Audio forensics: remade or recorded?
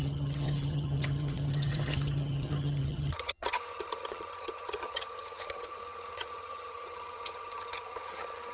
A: remade